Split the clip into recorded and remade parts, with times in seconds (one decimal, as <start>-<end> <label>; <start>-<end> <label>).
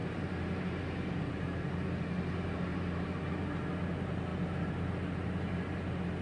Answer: 0.0-1.6 remade; 1.6-2.7 recorded; 2.7-3.3 remade; 3.3-6.2 recorded